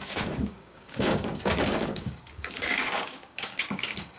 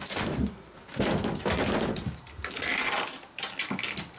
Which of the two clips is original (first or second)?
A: second